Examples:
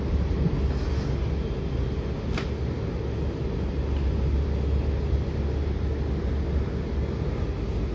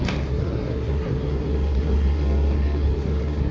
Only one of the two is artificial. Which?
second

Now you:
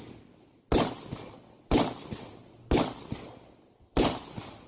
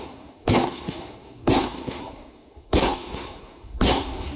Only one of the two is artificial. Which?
second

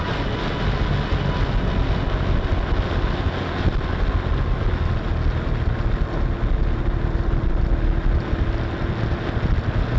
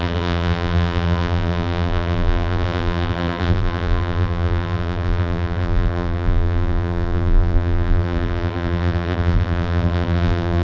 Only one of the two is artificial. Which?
second